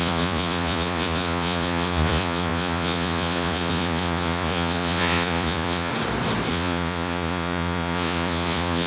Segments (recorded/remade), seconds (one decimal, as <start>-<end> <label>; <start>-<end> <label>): 0.0-5.9 remade; 5.9-6.5 recorded; 6.5-8.9 remade